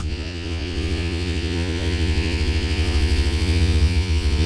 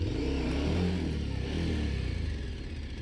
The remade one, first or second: first